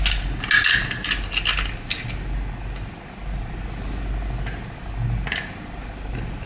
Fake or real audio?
real